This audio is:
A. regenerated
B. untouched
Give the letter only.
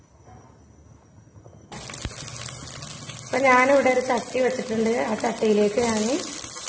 B